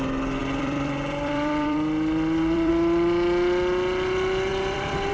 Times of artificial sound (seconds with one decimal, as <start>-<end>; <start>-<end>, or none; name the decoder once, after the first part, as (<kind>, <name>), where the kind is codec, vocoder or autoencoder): 0.4-2.7 (vocoder, BigVGAN v2); 4.5-5.1